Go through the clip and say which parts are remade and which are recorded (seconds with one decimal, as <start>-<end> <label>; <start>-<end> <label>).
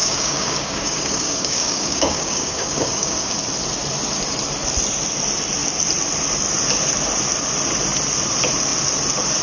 0.0-3.3 remade; 3.3-9.4 recorded